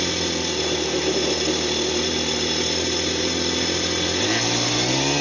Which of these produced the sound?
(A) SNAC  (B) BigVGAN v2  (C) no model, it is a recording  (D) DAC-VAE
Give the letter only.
C